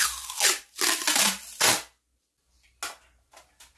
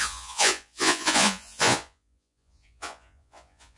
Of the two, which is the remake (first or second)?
second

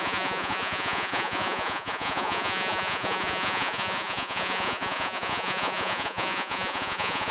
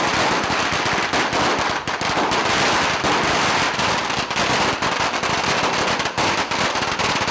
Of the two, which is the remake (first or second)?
first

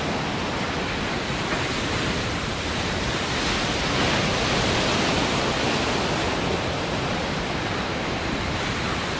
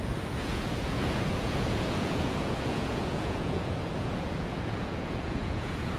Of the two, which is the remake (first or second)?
second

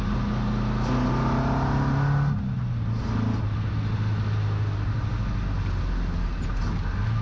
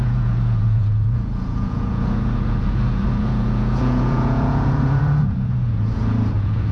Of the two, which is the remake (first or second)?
second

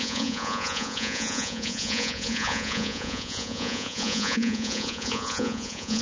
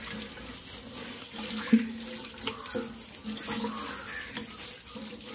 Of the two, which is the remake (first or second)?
first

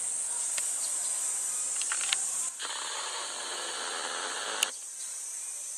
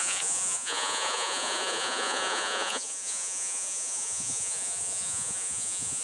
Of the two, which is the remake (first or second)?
second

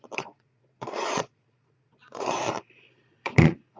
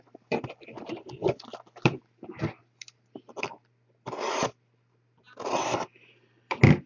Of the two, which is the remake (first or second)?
first